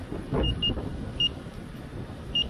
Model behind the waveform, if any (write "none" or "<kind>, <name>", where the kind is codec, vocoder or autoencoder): none